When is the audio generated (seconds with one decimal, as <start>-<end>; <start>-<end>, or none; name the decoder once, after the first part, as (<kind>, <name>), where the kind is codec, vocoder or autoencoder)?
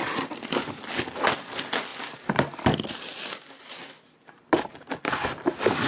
none